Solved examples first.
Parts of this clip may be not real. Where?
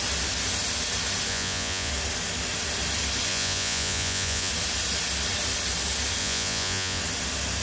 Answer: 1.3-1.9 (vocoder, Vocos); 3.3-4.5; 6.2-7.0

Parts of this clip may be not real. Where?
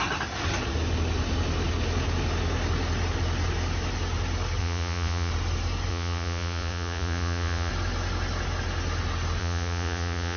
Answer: 4.6-5.3 (vocoder, Vocos); 5.9-7.7; 9.4-10.4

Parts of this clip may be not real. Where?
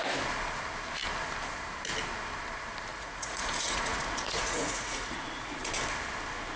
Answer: 2.9-5.7 (vocoder, Vocos)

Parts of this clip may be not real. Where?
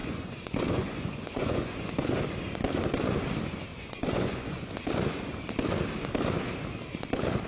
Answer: 0.0-1.9 (vocoder, Vocos); 3.7-4.9